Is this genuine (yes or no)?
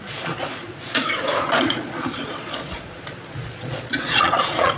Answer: no